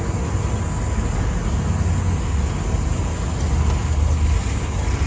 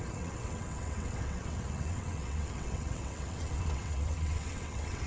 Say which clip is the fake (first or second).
second